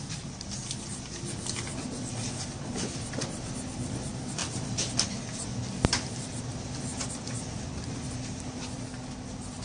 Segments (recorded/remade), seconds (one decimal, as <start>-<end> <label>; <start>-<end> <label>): 0.0-4.4 recorded; 4.4-6.4 remade; 6.4-6.9 recorded; 6.9-7.7 remade; 7.7-9.6 recorded